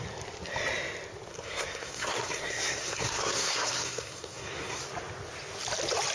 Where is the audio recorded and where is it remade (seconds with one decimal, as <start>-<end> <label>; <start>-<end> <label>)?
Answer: 0.0-1.3 recorded; 1.3-4.8 remade; 4.8-6.1 recorded